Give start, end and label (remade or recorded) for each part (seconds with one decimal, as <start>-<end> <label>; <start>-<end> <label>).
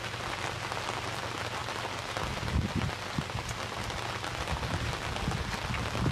0.0-6.1 recorded